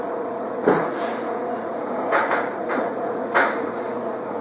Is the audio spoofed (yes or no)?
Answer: yes